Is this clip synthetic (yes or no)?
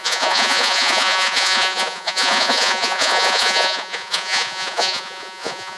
yes